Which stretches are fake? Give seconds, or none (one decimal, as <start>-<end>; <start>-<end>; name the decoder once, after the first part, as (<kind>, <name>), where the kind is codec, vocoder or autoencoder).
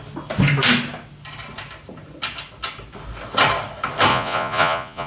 4.1-5.1 (vocoder, Vocos)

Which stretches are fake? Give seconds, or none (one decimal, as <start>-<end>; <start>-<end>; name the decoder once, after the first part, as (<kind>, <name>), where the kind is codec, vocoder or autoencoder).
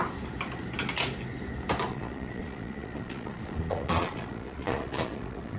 1.9-5.6 (vocoder, Vocos)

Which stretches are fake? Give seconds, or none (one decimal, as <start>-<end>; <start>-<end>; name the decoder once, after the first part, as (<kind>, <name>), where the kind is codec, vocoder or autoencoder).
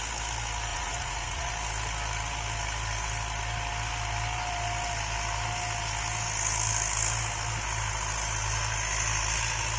0.7-1.5 (vocoder, Vocos)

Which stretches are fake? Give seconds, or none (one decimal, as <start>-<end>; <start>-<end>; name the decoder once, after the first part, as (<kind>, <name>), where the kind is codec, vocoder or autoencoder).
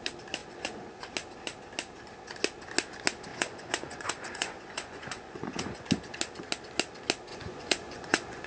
0.4-1.1 (vocoder, Vocos); 3.3-5.9; 7.3-8.5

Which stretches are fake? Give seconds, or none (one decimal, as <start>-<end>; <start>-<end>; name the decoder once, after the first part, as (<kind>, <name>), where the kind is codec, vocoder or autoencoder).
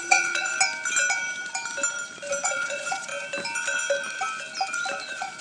0.0-0.5 (vocoder, Vocos); 2.4-3.1; 5.0-5.4